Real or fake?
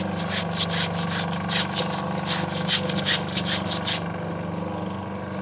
real